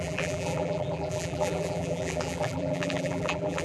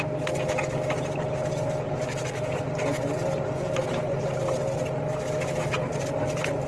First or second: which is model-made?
first